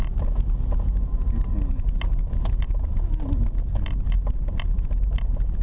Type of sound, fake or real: real